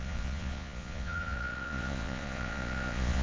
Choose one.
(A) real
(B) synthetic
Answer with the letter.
B